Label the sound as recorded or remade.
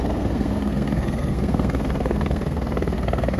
remade